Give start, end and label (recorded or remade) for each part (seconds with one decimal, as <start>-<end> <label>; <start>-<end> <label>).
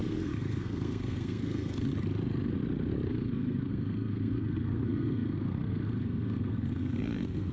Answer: 0.0-1.9 remade; 1.9-3.1 recorded; 3.1-7.5 remade